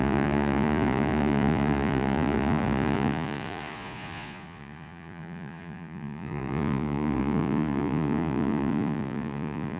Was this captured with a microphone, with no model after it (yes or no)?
no